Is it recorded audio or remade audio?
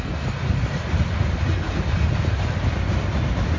recorded